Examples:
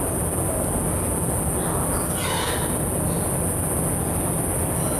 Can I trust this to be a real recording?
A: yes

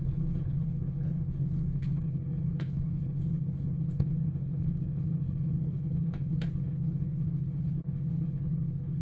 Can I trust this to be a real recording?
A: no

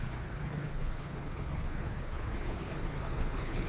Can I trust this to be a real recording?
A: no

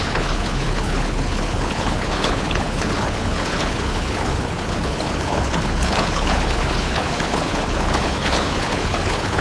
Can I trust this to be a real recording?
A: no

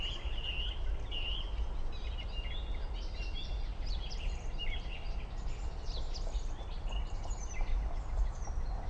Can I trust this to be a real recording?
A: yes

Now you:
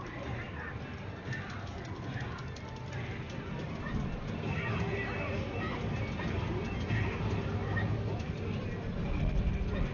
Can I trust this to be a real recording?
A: yes